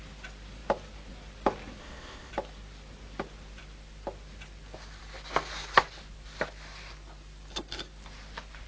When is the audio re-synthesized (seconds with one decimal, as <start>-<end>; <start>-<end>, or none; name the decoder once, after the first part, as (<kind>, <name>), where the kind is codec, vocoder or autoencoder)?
1.8-2.3 (codec, ZipCodec)